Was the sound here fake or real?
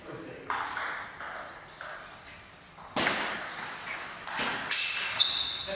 real